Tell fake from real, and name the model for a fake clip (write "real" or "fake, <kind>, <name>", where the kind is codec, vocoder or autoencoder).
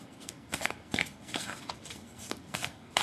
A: fake, codec, SNAC